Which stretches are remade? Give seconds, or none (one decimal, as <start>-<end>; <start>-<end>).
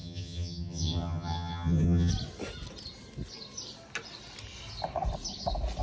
0.0-2.1